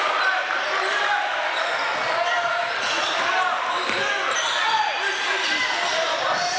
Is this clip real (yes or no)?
yes